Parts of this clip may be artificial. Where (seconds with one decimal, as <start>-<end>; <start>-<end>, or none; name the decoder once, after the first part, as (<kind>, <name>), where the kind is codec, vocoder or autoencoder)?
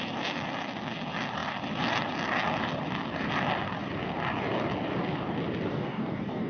5.7-6.5 (codec, DAC)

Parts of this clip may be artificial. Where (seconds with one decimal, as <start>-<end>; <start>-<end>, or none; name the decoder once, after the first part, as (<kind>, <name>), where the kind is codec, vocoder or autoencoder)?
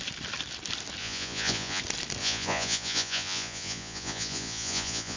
1.0-1.8 (vocoder, Vocos); 2.2-5.2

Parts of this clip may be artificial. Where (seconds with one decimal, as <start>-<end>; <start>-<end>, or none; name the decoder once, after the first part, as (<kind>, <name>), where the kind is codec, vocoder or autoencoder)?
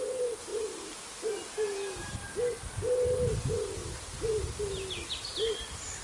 none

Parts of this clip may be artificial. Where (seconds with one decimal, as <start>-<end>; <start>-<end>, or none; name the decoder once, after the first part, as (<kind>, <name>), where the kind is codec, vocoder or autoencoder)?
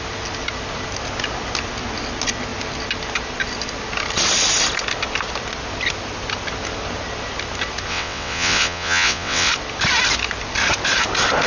7.9-9.5 (vocoder, WaveNeXt)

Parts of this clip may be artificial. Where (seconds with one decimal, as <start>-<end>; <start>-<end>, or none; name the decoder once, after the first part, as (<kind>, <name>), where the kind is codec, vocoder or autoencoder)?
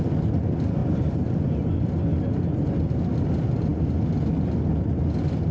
none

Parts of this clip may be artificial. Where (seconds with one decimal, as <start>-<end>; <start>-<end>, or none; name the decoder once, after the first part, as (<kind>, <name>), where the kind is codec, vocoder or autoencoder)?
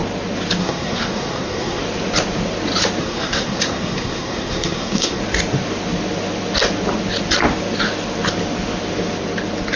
0.6-1.8 (codec, SNAC); 3.0-5.2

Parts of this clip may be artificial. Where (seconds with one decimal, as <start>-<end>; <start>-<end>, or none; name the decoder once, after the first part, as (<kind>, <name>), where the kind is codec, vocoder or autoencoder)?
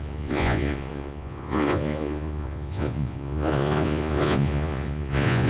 0.0-5.5 (vocoder, Vocos)